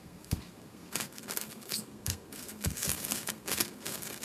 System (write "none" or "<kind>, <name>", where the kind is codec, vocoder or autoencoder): codec, SNAC